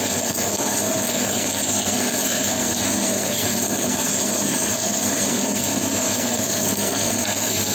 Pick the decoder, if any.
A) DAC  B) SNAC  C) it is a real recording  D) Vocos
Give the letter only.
B